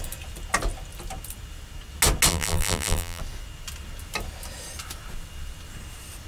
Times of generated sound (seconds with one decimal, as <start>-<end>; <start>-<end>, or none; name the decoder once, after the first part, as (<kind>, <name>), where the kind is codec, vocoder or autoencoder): 2.3-3.2 (vocoder, BigVGAN v2)